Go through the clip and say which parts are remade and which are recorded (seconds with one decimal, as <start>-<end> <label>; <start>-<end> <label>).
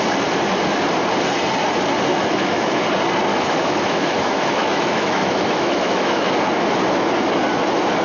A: 0.0-2.1 recorded; 2.1-2.8 remade; 2.8-3.3 recorded; 3.3-6.3 remade; 6.3-8.0 recorded